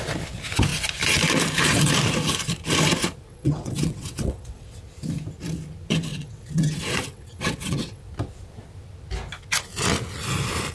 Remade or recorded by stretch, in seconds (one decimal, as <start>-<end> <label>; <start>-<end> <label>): 0.0-3.3 recorded; 3.3-4.8 remade; 4.8-6.1 recorded; 6.1-8.0 remade; 8.0-10.7 recorded